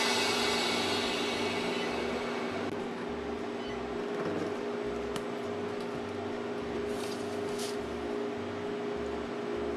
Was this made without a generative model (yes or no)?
yes